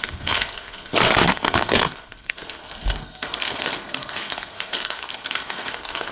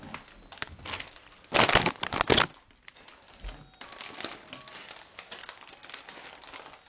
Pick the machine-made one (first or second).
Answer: first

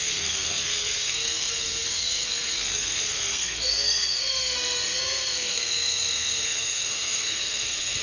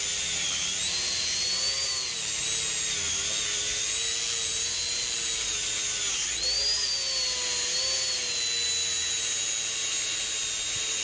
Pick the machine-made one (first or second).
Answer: first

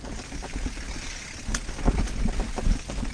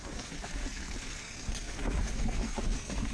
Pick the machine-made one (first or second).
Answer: second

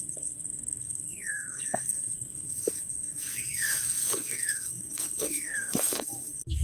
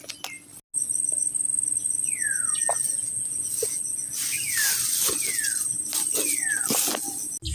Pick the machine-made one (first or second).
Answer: first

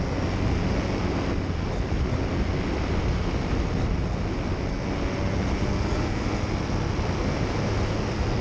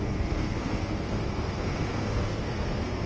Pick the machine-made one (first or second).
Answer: second